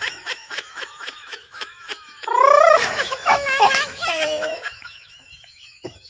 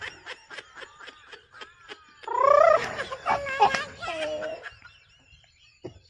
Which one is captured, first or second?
second